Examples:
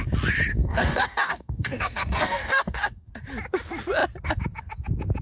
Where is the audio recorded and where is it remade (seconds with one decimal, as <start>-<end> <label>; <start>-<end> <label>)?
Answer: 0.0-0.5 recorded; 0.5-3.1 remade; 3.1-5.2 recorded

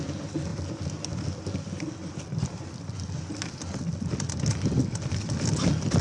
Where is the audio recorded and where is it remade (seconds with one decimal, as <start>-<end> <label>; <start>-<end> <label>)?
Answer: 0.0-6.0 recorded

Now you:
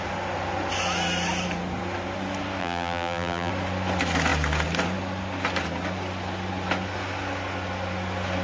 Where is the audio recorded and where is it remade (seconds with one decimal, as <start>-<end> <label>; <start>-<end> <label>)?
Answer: 0.0-2.6 recorded; 2.6-3.5 remade; 3.5-8.4 recorded

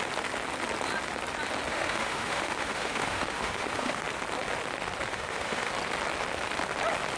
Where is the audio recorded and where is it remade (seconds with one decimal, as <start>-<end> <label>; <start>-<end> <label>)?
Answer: 0.0-1.7 recorded; 1.7-4.0 remade; 4.0-5.1 recorded; 5.1-5.7 remade; 5.7-7.2 recorded